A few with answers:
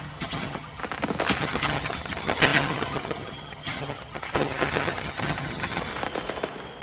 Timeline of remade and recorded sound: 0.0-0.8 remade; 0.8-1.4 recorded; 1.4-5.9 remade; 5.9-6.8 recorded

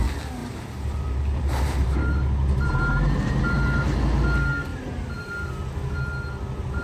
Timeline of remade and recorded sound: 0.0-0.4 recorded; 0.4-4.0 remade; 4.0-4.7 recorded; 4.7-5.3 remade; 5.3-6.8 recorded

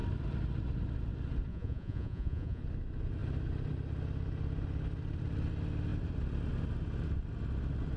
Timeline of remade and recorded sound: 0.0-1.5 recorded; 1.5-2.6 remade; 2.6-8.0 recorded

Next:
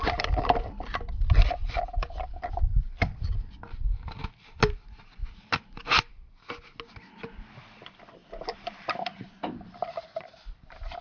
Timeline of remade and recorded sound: 0.0-2.7 remade; 2.7-3.6 recorded; 3.6-4.2 remade; 4.2-7.7 recorded; 7.7-11.0 remade

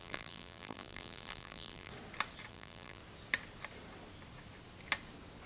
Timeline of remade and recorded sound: 0.0-1.9 remade; 1.9-2.5 recorded; 2.5-3.0 remade; 3.0-5.5 recorded

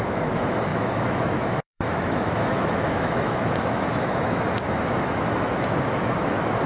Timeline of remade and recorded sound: 0.0-6.7 remade

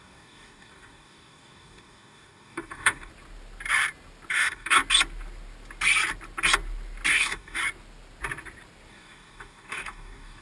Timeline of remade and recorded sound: 0.0-3.1 remade; 3.1-4.3 recorded; 4.3-4.8 remade; 4.8-7.1 recorded; 7.1-7.6 remade; 7.6-8.9 recorded; 8.9-10.4 remade